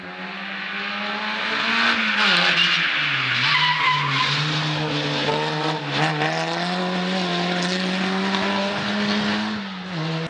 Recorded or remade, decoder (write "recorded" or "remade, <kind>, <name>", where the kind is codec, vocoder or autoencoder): recorded